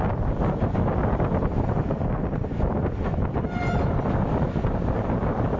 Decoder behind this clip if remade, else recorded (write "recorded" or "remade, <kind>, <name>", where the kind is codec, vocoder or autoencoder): recorded